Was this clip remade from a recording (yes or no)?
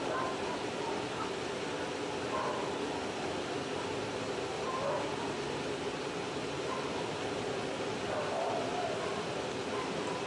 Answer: no